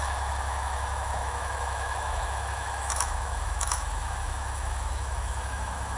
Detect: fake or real fake